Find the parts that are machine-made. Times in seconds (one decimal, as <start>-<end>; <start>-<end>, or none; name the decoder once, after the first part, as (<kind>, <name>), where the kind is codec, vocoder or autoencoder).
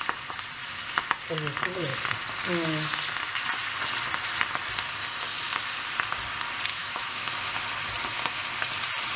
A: 6.7-7.3 (autoencoder, DAC-VAE)